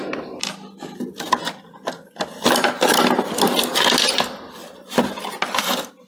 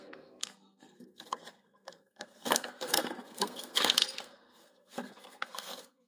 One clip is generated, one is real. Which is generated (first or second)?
second